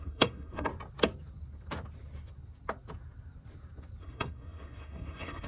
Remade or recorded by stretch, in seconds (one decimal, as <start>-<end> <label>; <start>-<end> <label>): 0.0-0.7 remade; 0.7-4.0 recorded; 4.0-5.5 remade